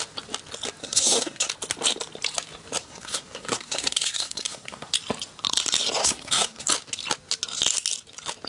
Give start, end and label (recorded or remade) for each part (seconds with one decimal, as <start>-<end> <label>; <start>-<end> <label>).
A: 0.0-0.8 recorded; 0.8-1.5 remade; 1.5-2.8 recorded; 2.8-4.9 remade; 4.9-6.0 recorded; 6.0-6.7 remade; 6.7-8.5 recorded